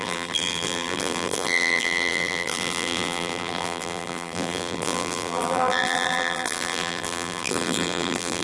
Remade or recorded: remade